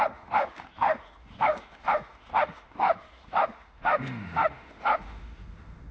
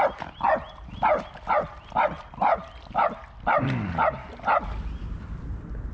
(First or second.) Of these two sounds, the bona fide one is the second